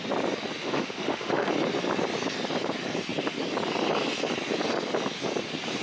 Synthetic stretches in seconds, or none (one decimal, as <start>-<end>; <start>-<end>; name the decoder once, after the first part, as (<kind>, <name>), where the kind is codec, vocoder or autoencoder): 0.6-1.5 (autoencoder, DAC-VAE)

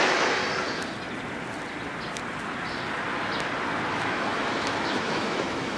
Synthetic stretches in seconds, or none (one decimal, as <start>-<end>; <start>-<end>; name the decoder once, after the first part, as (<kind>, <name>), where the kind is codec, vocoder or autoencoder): 0.0-0.4 (autoencoder, DAC-VAE); 3.9-5.8